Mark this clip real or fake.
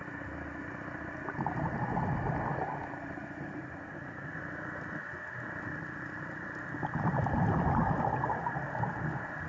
real